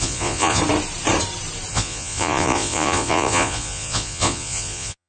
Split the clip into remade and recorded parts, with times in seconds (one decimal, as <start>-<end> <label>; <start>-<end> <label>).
0.0-0.6 remade; 0.6-1.7 recorded; 1.7-5.1 remade